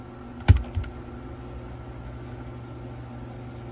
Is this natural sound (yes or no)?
yes